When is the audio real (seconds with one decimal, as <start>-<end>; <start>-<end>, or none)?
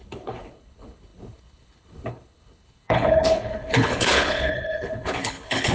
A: none